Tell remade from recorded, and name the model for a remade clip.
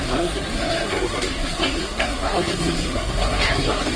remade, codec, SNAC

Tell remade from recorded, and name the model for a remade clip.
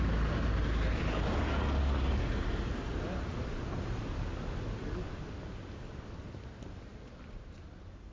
recorded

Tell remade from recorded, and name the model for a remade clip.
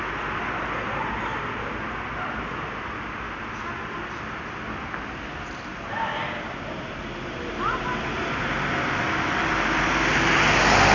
recorded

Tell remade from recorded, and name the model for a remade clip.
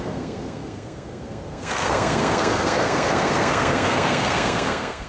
remade, codec, SNAC